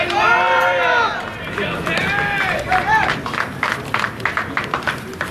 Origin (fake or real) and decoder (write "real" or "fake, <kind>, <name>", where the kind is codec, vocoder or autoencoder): real